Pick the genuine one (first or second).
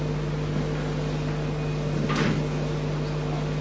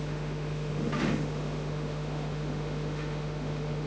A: first